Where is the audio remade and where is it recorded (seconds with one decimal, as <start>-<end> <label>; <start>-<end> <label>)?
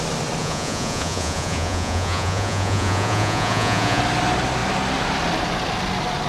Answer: 0.0-0.4 recorded; 0.4-4.0 remade; 4.0-6.3 recorded